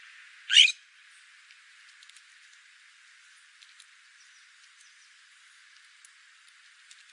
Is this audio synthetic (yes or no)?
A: no